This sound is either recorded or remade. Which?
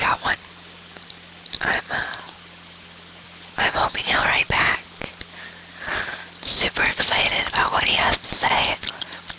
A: recorded